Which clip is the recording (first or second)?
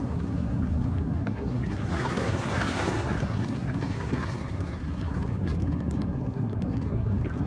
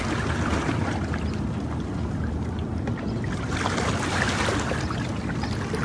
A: second